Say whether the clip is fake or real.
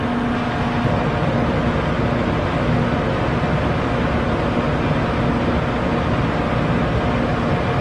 real